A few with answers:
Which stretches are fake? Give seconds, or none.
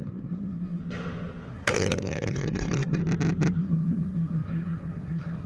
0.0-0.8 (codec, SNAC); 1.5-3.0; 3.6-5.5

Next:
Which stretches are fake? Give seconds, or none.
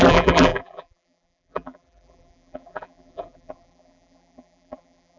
0.0-5.2 (vocoder, BigVGAN v2)